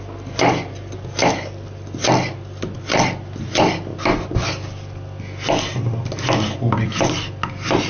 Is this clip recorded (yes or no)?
yes